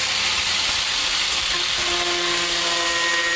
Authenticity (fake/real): real